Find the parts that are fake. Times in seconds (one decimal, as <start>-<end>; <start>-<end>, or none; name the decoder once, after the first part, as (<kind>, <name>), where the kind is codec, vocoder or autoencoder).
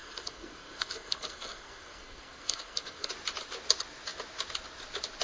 0.0-3.1 (codec, SNAC)